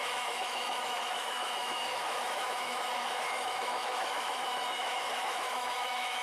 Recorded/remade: remade